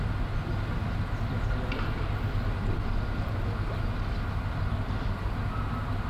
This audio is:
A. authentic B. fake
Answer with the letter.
A